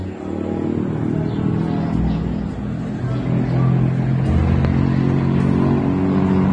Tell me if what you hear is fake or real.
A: real